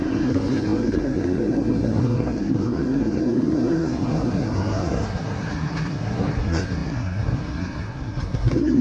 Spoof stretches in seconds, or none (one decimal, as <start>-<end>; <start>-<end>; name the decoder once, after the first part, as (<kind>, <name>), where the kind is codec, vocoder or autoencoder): 0.0-8.8 (codec, SNAC)